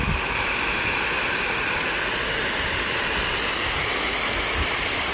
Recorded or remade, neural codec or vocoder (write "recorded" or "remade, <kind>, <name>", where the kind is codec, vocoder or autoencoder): recorded